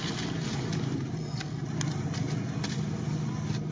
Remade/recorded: recorded